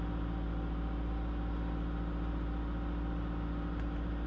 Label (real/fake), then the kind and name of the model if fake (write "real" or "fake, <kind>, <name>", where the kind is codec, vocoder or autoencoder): real